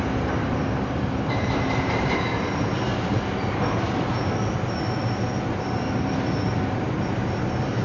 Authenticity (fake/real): real